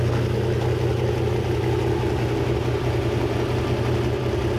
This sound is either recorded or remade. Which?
recorded